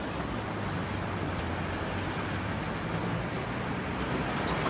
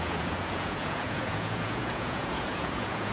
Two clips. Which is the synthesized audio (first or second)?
second